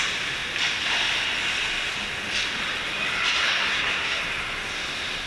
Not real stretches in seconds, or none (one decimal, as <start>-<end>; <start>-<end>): 3.4-4.2